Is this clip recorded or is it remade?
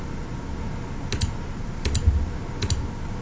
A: recorded